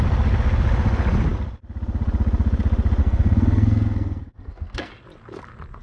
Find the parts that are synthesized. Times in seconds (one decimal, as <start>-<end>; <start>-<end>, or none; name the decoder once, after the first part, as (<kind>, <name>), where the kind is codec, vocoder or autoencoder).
3.0-4.9 (codec, SNAC)